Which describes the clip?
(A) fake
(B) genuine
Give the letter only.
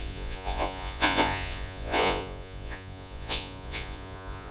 A